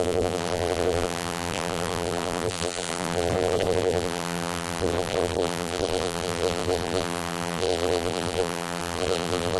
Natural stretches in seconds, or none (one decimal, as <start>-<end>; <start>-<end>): none